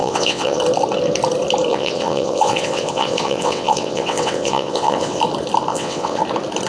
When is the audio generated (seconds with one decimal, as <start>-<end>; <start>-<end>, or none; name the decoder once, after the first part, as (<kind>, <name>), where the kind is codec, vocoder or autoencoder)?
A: 0.0-0.6 (vocoder, WaveNeXt); 1.7-5.2; 5.7-6.2